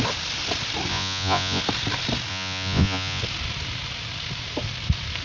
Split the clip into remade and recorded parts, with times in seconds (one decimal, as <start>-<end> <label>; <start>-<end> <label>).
0.0-0.9 recorded; 0.9-1.6 remade; 1.6-2.3 recorded; 2.3-3.2 remade; 3.2-5.2 recorded